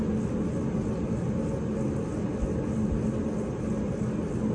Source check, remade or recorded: recorded